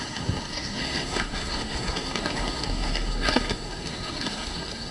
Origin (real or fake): fake